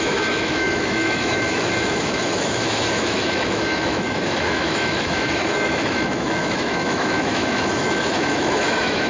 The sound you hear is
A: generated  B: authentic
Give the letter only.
A